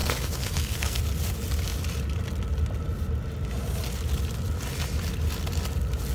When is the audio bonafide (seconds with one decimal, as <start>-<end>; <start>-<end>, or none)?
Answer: 1.0-6.1